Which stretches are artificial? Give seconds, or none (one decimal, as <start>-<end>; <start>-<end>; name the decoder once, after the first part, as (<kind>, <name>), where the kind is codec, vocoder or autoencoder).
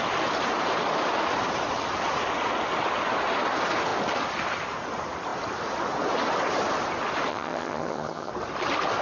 7.3-8.3 (vocoder, HiFi-GAN)